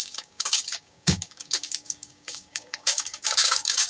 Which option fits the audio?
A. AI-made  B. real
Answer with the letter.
A